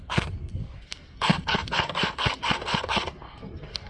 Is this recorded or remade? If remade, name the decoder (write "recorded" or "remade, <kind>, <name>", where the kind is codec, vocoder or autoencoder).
remade, codec, SNAC